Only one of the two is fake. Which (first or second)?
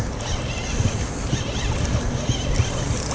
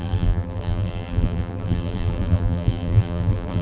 second